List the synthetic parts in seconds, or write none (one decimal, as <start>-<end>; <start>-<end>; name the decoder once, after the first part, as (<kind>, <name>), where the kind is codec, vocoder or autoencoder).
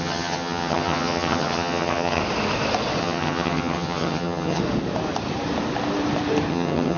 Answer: 0.0-2.2 (vocoder, HiFi-GAN); 3.0-4.6; 6.5-7.0